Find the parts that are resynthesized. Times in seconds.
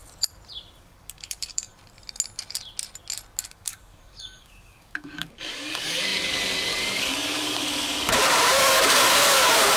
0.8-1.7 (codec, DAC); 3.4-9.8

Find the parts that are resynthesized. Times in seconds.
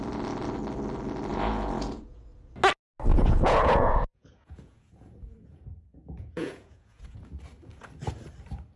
1.3-2.3 (vocoder, Vocos); 3.1-7.2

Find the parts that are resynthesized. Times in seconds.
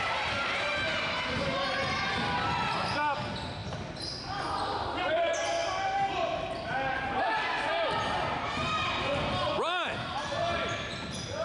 none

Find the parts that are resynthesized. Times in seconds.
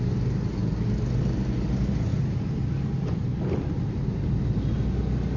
none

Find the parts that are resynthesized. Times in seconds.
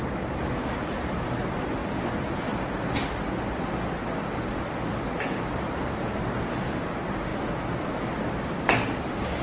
1.8-2.7 (vocoder, BigVGAN v2); 4.0-6.0; 7.3-8.0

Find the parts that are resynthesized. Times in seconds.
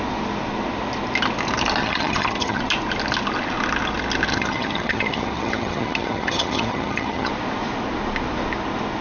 1.8-2.6 (vocoder, HiFi-GAN); 4.3-7.3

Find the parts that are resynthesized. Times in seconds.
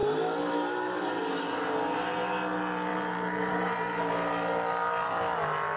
2.9-4.0 (vocoder, BigVGAN v2)